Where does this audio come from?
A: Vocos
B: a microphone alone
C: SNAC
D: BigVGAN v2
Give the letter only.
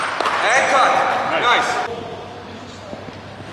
B